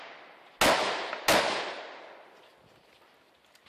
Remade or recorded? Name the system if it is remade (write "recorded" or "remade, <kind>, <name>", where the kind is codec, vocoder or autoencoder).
recorded